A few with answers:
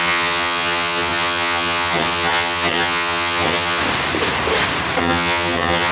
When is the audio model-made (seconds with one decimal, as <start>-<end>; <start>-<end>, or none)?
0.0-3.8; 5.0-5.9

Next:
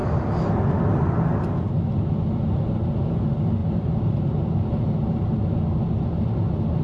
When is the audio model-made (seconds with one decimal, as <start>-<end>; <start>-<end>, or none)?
3.6-5.2

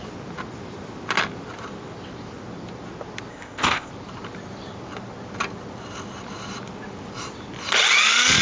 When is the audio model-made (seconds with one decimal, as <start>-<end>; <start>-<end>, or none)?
3.3-3.9